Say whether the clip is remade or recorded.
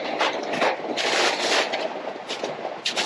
recorded